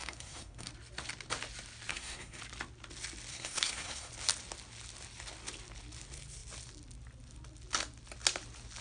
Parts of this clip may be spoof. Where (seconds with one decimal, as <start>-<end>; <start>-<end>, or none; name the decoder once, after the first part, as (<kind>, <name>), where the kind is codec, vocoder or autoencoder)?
0.0-0.7 (codec, SNAC); 1.9-2.4; 3.3-4.1